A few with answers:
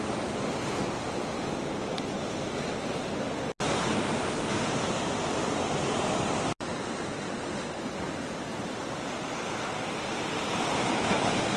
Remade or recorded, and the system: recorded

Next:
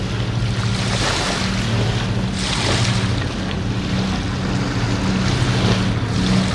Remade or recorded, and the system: recorded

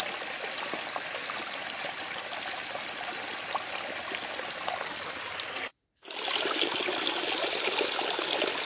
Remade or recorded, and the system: recorded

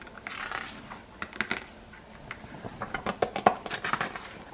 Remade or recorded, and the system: recorded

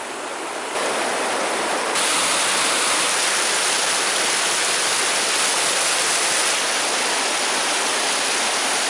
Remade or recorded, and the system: recorded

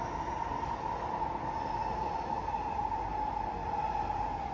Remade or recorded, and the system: recorded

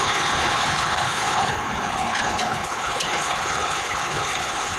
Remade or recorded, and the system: remade, codec, HILCodec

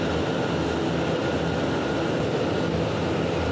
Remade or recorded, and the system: recorded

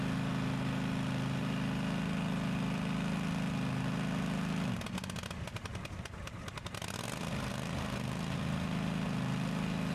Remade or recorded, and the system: recorded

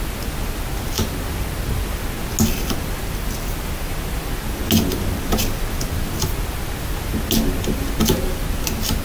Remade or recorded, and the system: recorded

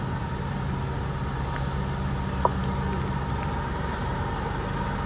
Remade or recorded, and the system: recorded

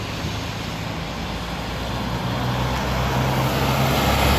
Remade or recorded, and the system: recorded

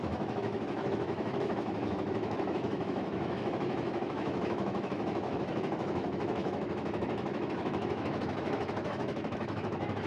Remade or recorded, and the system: remade, autoencoder, DAC-VAE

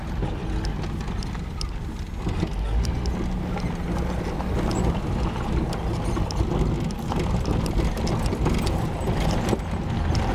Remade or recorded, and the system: recorded